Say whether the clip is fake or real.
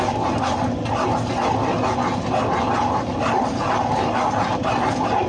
real